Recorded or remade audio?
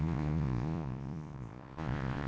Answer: remade